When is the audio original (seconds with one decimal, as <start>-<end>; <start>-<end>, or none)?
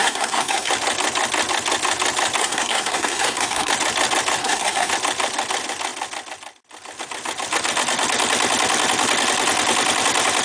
0.7-2.4; 3.7-4.4; 4.9-10.4